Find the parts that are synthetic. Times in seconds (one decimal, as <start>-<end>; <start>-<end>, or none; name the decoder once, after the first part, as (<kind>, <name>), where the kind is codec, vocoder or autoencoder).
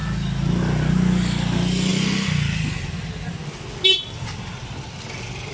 none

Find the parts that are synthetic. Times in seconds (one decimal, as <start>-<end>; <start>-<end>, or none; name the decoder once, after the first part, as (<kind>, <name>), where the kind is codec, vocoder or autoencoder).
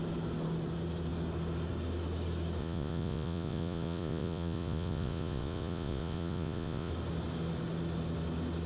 2.6-6.9 (vocoder, Vocos)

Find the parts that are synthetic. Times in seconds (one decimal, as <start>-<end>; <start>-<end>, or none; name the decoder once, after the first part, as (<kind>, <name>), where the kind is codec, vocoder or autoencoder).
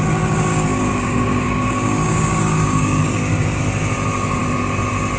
0.5-3.6 (codec, DAC)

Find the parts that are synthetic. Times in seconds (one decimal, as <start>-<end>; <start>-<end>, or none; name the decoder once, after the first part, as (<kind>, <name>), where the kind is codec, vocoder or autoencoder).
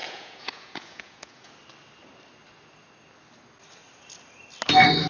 0.0-1.5 (vocoder, Vocos)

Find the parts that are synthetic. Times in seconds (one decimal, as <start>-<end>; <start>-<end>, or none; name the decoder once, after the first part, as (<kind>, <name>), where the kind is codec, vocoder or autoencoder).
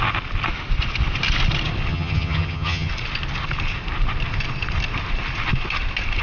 1.9-2.9 (vocoder, HiFi-GAN)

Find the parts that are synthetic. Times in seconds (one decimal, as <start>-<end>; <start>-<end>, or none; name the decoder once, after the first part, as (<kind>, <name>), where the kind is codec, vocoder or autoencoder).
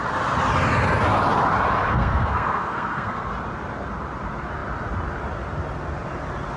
1.8-3.3 (codec, SNAC)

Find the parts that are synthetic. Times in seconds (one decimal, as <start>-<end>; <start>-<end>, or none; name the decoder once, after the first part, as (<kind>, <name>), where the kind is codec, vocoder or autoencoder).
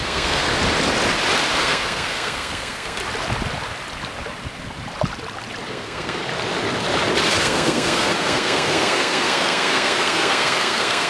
0.0-0.5 (codec, SNAC); 1.6-3.0; 5.7-6.2; 7.4-11.1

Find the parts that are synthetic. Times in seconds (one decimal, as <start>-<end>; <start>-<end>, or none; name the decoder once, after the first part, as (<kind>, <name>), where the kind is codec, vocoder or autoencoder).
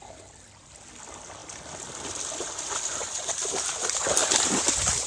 1.4-3.3 (vocoder, BigVGAN v2); 4.2-5.1